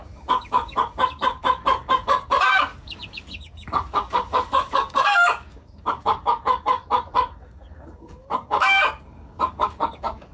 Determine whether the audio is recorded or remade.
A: remade